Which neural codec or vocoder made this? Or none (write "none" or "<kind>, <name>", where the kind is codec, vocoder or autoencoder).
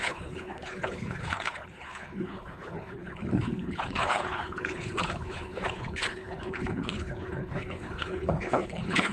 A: codec, HILCodec